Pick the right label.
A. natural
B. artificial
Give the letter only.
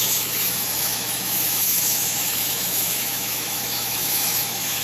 B